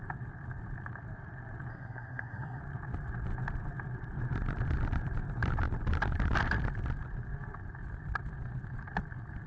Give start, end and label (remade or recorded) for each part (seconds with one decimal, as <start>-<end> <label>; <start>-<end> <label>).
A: 0.0-1.7 recorded; 1.7-2.6 remade; 2.6-9.5 recorded